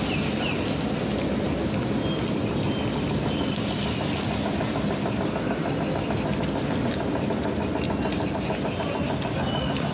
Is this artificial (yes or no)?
no